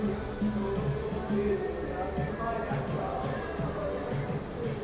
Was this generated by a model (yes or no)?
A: no